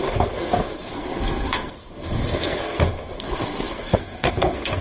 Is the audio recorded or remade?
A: remade